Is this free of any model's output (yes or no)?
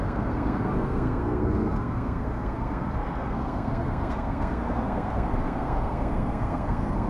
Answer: no